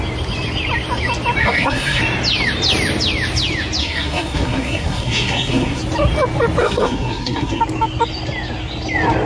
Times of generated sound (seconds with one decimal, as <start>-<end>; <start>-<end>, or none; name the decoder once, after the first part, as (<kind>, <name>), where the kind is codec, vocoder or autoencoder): 1.4-2.0 (codec, SNAC); 3.8-5.8; 6.6-7.6